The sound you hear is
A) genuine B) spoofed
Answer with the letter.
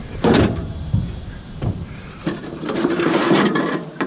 B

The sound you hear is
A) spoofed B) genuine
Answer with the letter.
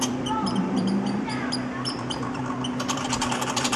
A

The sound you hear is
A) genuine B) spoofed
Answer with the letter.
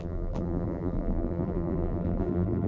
B